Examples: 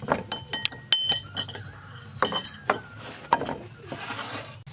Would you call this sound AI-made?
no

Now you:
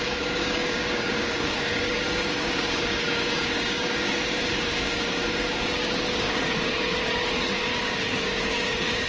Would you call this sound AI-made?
yes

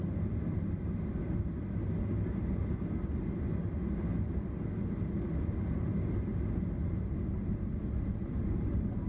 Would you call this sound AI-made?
no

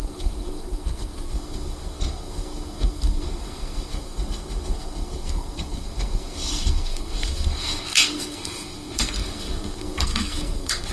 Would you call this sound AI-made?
yes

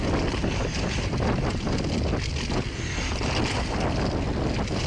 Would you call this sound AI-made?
no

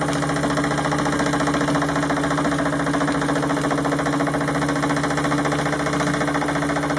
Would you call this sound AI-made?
no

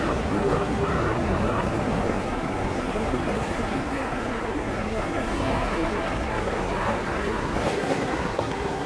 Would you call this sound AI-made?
yes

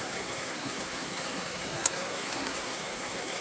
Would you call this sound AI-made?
yes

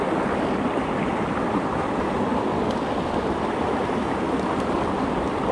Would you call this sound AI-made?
no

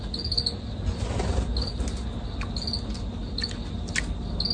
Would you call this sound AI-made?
no